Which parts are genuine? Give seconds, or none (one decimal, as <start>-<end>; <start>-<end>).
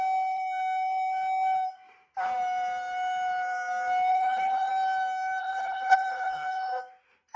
0.0-4.1; 4.7-5.4; 6.8-7.4